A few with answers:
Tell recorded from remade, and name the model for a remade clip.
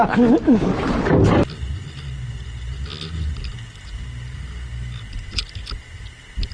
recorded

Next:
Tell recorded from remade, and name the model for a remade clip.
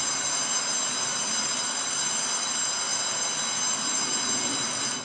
recorded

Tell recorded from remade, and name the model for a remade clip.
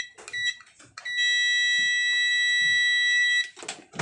recorded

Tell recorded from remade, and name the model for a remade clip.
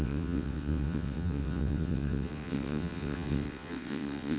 remade, vocoder, WaveNeXt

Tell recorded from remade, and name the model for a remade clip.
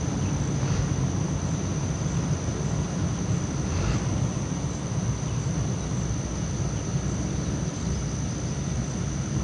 recorded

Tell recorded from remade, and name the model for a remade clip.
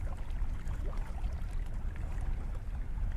recorded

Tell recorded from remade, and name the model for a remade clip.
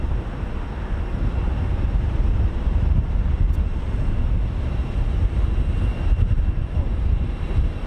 recorded